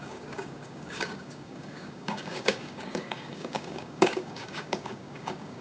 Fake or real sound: fake